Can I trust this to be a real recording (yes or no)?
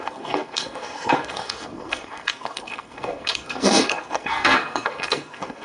no